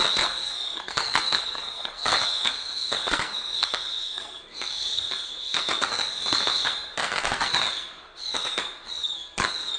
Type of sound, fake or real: fake